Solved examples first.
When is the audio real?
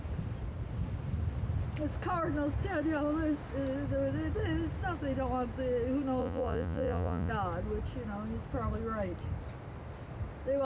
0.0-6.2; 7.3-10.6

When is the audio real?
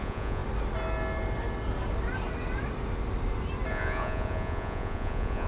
0.4-3.7